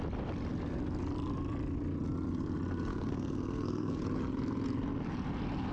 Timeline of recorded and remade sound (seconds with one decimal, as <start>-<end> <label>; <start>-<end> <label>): 0.0-2.9 recorded; 2.9-4.0 remade; 4.0-5.7 recorded